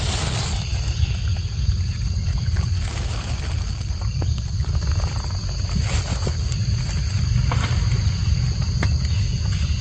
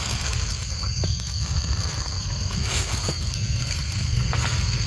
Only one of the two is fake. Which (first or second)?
second